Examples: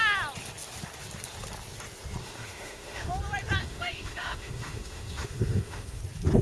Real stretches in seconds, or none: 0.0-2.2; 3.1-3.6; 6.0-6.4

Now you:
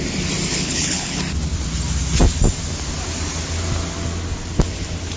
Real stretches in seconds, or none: 0.0-0.5; 1.2-5.2

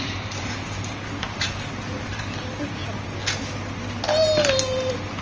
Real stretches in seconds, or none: 2.8-5.2

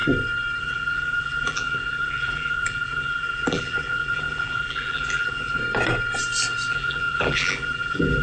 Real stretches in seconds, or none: 0.0-0.6; 5.6-6.7

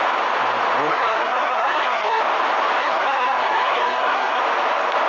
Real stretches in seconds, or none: 0.0-0.9; 2.2-2.8; 4.4-5.1

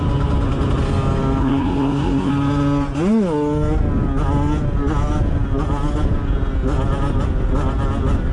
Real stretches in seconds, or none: 0.0-1.4; 2.3-8.3

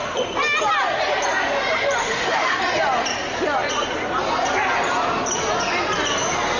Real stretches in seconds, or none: 0.0-2.0; 2.6-6.6

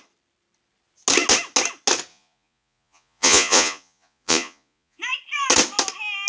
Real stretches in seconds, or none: 0.0-2.1; 5.0-6.3